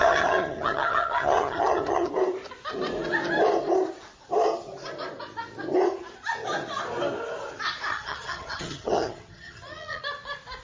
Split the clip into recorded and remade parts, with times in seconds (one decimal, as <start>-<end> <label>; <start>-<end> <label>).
0.0-2.1 remade; 2.1-7.9 recorded; 7.9-10.0 remade; 10.0-10.6 recorded